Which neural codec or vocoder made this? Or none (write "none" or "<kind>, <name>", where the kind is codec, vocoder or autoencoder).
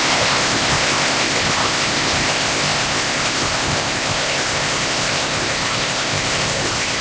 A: codec, ZipCodec